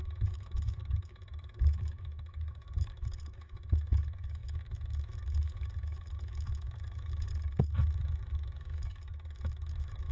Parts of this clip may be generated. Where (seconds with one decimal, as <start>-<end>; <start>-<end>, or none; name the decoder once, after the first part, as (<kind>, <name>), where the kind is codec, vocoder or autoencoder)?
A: 0.0-10.1 (autoencoder, DAC-VAE)